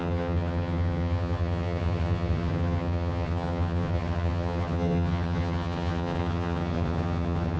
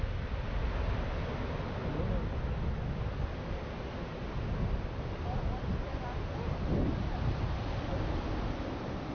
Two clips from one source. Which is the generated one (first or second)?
first